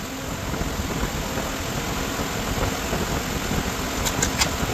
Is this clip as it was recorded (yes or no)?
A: yes